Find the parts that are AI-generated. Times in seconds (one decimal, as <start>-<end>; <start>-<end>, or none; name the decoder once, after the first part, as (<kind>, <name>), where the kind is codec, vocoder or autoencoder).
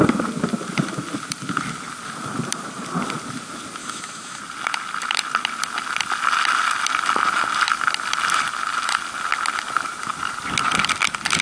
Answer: 3.8-4.4 (autoencoder, DAC-VAE)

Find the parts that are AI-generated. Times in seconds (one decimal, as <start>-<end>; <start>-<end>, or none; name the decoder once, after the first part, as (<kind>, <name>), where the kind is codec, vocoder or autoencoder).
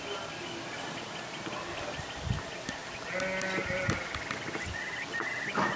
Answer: none